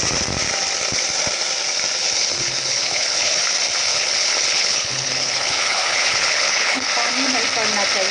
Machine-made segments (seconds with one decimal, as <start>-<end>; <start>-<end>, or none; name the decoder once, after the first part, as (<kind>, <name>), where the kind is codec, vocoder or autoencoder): 2.0-3.4 (codec, HILCodec); 3.9-6.9